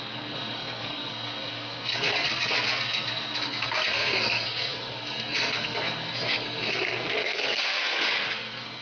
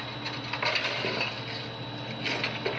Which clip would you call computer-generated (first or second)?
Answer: first